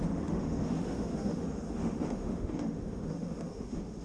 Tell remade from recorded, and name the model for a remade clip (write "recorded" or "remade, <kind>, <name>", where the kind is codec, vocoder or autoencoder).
remade, autoencoder, DAC-VAE